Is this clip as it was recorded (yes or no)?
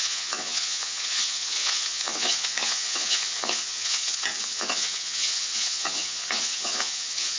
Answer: no